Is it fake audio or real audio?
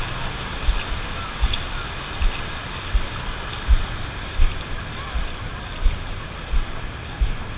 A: real